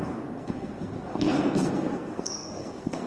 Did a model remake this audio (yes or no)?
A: yes